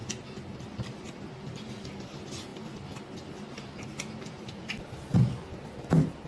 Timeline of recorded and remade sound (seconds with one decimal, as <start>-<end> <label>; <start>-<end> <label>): 0.0-6.3 recorded